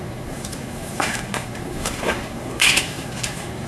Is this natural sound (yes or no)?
no